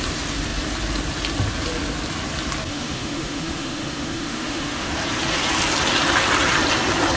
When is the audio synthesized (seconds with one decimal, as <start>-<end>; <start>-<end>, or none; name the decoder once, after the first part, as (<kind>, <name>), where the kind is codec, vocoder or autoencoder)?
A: 2.7-4.9 (autoencoder, DAC-VAE)

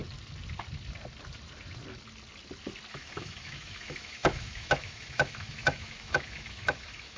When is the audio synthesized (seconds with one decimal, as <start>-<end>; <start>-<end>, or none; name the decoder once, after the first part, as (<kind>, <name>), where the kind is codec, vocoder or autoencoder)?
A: 2.9-7.2 (autoencoder, DAC-VAE)

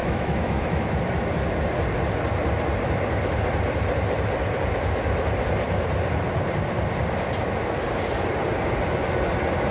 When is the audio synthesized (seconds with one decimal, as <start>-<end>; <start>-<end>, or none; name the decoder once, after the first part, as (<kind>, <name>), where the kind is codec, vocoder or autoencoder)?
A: 0.0-0.9 (autoencoder, DAC-VAE)

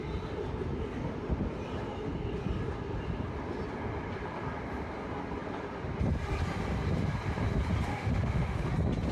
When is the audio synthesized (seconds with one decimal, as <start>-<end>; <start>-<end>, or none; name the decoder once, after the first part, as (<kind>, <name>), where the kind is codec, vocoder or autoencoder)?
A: 7.9-8.7 (autoencoder, DAC-VAE)

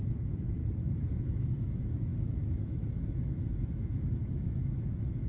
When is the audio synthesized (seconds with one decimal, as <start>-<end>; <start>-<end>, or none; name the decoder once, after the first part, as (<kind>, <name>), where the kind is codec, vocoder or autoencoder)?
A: 0.0-0.6 (autoencoder, DAC-VAE); 1.2-5.3

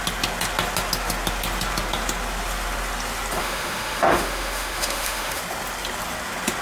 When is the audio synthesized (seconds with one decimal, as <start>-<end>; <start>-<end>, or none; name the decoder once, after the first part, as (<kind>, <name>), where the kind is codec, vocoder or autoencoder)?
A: 3.4-5.4 (autoencoder, DAC-VAE)

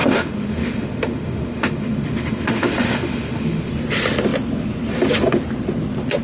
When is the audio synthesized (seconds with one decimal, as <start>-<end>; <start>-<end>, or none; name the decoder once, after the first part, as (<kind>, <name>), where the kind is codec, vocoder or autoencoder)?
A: 0.0-3.7 (autoencoder, DAC-VAE)

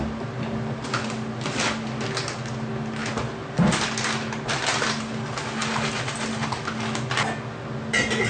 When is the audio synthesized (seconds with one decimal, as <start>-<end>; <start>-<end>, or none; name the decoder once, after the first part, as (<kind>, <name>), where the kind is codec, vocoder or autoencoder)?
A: none